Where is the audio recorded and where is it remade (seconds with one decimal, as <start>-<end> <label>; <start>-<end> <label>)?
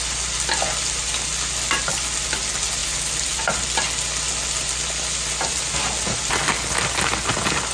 0.0-7.7 recorded